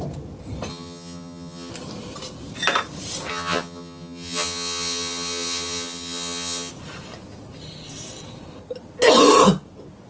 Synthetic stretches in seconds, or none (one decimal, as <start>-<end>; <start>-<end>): 0.7-1.7; 3.3-6.7